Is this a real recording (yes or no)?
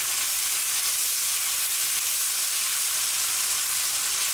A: yes